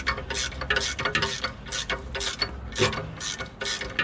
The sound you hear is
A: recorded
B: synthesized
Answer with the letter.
A